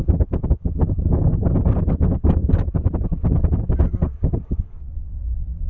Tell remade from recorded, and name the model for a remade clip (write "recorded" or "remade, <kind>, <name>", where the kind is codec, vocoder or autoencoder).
recorded